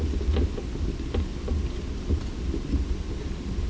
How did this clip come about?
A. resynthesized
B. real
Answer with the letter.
B